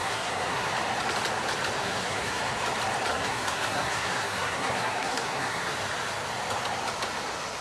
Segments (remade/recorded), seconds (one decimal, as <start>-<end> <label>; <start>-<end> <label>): 0.0-0.7 remade; 0.7-1.8 recorded; 1.8-2.4 remade; 2.4-3.1 recorded; 3.1-5.7 remade; 5.7-7.6 recorded